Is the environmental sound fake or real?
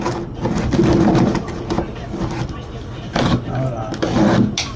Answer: real